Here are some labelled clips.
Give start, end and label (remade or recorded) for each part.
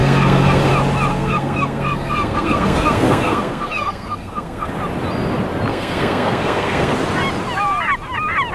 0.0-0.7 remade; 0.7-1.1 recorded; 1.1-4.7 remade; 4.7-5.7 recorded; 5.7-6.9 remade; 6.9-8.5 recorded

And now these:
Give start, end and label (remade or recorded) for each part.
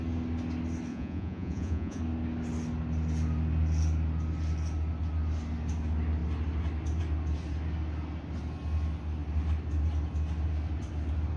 0.0-0.9 recorded; 0.9-2.0 remade; 2.0-11.4 recorded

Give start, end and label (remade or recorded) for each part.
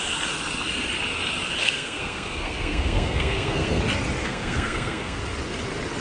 0.0-1.6 recorded; 1.6-3.8 remade; 3.8-4.2 recorded; 4.2-5.2 remade; 5.2-6.0 recorded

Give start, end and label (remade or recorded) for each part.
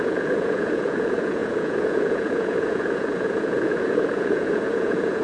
0.0-5.2 remade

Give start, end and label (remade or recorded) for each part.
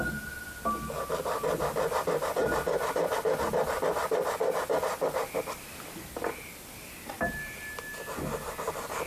0.0-9.1 recorded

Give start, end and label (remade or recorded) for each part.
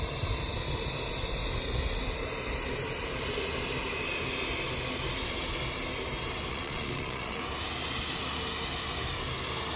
0.0-6.5 recorded; 6.5-7.4 remade; 7.4-9.8 recorded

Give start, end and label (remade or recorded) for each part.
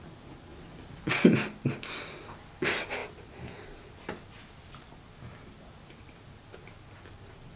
0.0-7.6 recorded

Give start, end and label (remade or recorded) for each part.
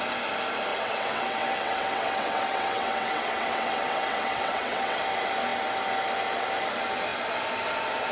0.0-0.7 recorded; 0.7-5.0 remade; 5.0-8.1 recorded